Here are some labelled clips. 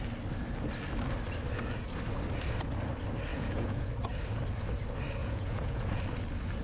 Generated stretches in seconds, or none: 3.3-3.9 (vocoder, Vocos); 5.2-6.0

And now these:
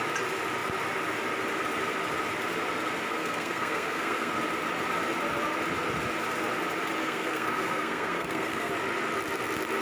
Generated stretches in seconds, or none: 3.2-4.3 (codec, SNAC); 7.0-8.7

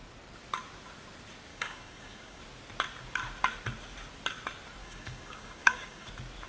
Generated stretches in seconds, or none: 1.5-2.4 (codec, DAC); 4.8-6.1

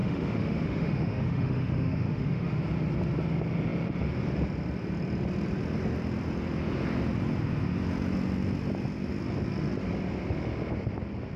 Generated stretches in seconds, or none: 0.0-2.6 (autoencoder, DAC-VAE)